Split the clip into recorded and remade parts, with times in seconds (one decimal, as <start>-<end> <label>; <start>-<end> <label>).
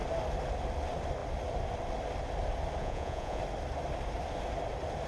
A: 0.0-2.8 recorded; 2.8-3.4 remade; 3.4-5.1 recorded